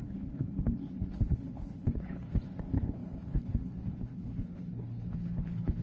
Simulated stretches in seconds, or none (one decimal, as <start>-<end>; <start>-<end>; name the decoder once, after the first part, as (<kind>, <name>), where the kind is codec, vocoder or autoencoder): 0.0-5.8 (codec, HILCodec)